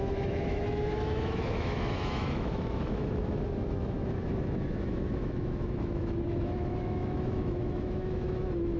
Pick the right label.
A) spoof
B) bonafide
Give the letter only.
A